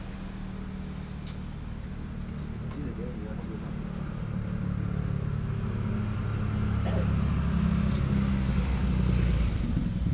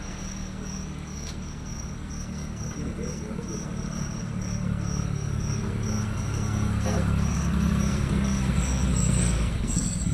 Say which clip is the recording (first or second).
first